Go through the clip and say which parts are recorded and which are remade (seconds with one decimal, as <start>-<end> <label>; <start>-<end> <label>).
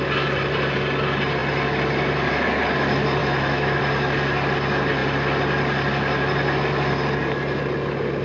0.0-3.2 recorded; 3.2-3.8 remade; 3.8-8.2 recorded